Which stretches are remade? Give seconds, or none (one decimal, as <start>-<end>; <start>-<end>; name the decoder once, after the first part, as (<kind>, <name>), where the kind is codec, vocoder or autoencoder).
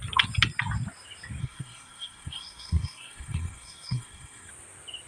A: 1.4-4.5 (codec, SNAC)